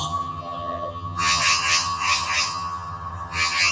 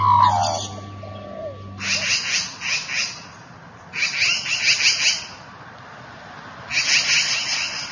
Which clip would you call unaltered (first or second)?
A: second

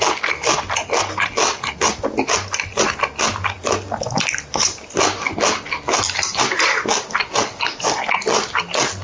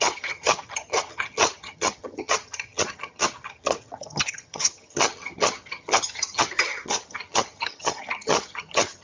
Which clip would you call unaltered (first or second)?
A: first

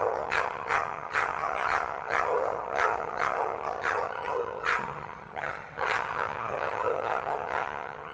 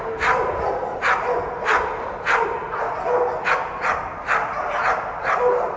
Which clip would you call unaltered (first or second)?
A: second